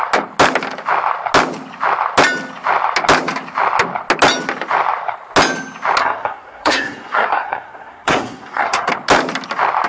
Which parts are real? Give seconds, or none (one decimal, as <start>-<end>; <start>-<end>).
0.0-6.0; 8.9-9.9